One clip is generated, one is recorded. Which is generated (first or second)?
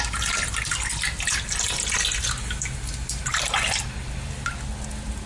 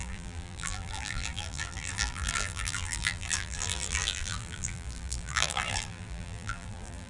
second